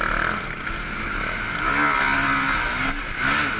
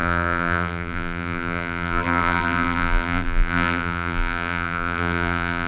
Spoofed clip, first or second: second